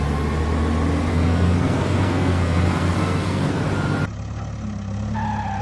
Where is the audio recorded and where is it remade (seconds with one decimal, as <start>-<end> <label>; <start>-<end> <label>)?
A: 0.0-1.1 recorded; 1.1-3.6 remade; 3.6-5.6 recorded